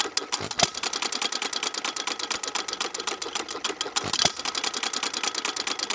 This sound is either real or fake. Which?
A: real